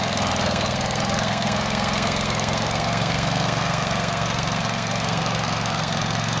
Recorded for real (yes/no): no